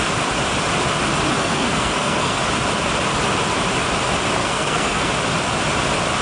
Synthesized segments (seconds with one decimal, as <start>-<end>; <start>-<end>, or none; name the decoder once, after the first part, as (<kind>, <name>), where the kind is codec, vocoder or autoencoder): 1.4-2.4 (codec, SNAC); 4.4-5.1